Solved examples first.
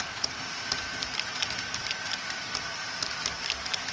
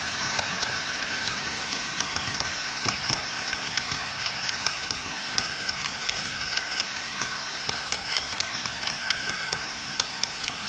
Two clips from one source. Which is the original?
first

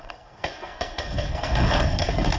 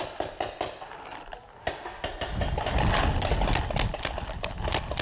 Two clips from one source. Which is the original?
second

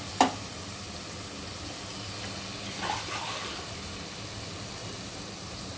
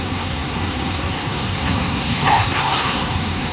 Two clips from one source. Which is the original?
first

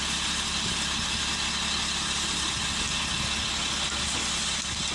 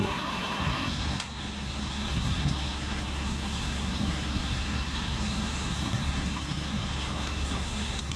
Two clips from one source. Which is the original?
first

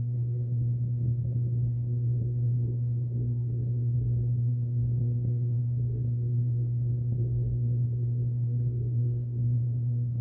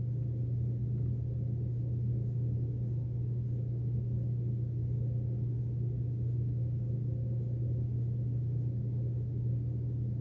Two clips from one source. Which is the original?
second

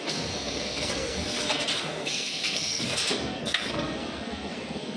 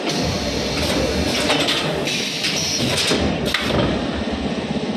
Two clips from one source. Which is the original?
second